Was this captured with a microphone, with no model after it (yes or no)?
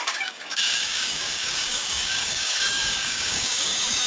no